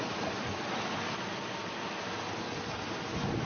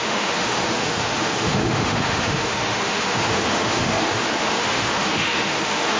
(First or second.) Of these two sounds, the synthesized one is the second